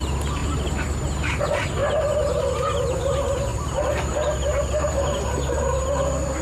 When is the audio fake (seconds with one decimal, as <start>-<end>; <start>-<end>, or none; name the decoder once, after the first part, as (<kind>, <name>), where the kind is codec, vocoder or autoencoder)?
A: 0.4-1.4 (vocoder, BigVGAN v2); 3.5-5.9